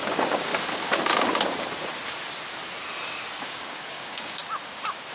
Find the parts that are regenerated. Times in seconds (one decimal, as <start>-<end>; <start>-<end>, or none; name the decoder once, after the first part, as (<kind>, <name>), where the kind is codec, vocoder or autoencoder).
0.0-0.5 (codec, DAC); 3.4-4.4